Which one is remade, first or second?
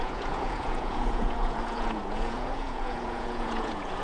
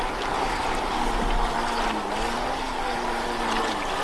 first